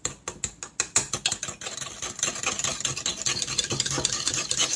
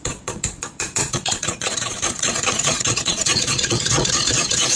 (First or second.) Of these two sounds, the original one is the first